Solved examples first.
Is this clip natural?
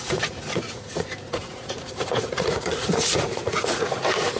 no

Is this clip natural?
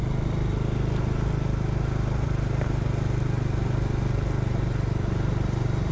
yes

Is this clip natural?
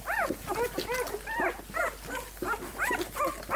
yes